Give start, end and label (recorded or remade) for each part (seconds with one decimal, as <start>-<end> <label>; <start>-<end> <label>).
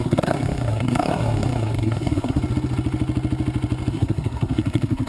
0.0-2.4 remade; 2.4-3.9 recorded; 3.9-5.1 remade